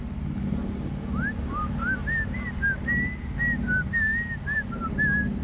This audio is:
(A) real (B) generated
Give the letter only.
A